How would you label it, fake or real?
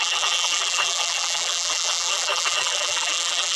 fake